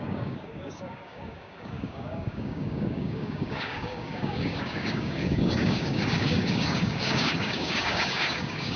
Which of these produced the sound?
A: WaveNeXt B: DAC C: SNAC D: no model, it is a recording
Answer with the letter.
B